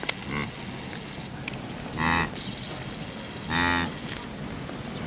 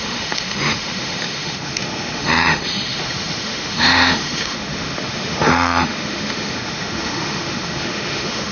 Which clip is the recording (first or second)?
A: first